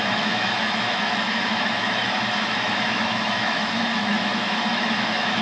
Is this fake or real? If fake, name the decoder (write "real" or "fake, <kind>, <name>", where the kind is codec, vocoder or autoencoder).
fake, autoencoder, DAC-VAE